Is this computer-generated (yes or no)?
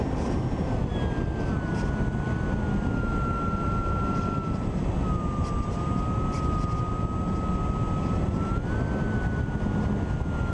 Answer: no